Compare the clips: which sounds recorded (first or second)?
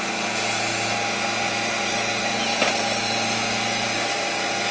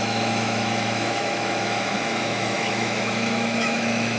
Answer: first